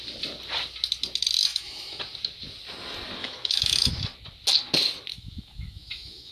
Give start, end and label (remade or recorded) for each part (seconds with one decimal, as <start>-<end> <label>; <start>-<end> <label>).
0.0-1.5 recorded; 1.5-2.0 remade; 2.0-3.2 recorded; 3.2-3.9 remade; 3.9-5.1 recorded; 5.1-6.3 remade